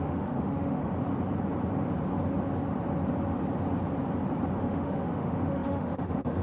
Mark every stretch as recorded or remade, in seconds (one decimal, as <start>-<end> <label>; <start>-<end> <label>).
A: 0.0-0.8 remade; 0.8-4.6 recorded; 4.6-6.4 remade

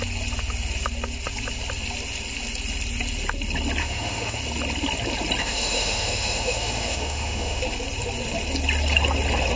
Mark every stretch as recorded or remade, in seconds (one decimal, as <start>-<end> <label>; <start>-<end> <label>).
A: 0.0-3.8 recorded; 3.8-4.4 remade; 4.4-5.4 recorded; 5.4-7.6 remade; 7.6-9.6 recorded

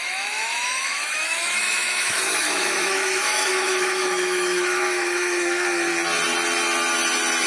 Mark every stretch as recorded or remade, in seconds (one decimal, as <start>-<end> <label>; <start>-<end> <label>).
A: 0.0-5.9 remade; 5.9-7.5 recorded

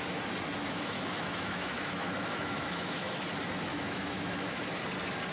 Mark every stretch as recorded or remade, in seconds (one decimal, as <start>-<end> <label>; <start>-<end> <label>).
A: 0.0-0.6 recorded; 0.6-3.2 remade; 3.2-3.7 recorded; 3.7-4.6 remade; 4.6-5.3 recorded

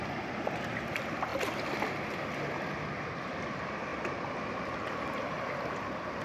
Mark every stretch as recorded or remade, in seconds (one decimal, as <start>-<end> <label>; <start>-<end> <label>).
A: 0.0-6.2 recorded

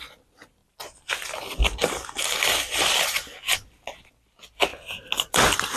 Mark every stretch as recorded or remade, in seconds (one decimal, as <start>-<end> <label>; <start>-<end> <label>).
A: 0.0-5.8 recorded

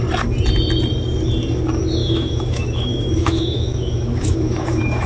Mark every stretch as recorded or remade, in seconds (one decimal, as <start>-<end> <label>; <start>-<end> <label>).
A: 0.0-2.0 recorded; 2.0-5.1 remade

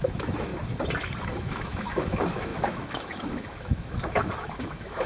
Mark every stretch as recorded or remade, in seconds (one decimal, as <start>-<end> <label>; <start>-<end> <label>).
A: 0.0-0.5 remade; 0.5-1.4 recorded; 1.4-5.1 remade